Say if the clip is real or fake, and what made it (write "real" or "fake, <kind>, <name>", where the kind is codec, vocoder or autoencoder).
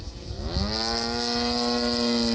real